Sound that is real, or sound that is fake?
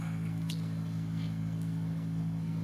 fake